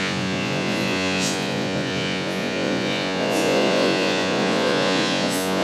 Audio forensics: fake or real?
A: fake